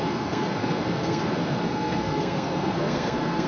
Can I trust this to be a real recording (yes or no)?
no